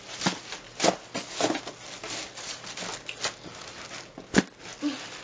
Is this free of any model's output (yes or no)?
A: yes